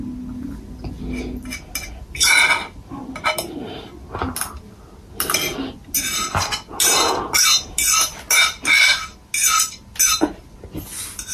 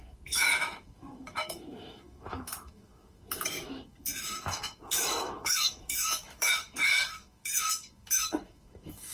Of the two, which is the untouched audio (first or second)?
first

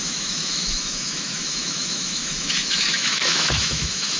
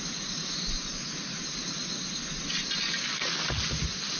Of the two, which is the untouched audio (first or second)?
second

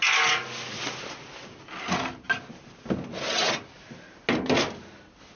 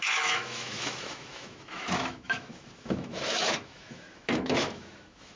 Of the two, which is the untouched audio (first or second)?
first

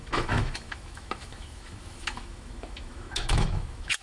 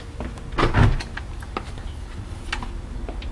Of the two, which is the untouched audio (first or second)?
second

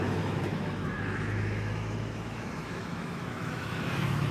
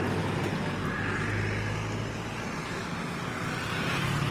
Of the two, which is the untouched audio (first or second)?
second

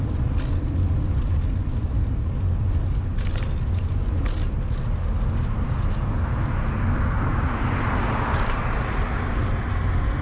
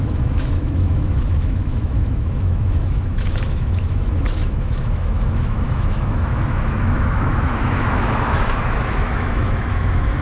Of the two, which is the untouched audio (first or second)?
first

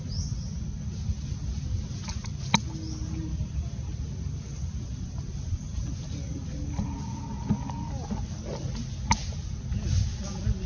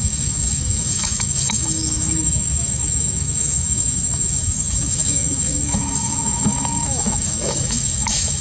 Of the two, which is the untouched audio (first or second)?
first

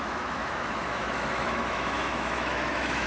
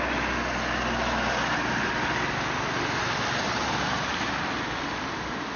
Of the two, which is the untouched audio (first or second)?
second